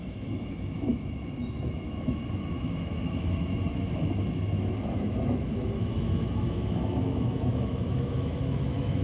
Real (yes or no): no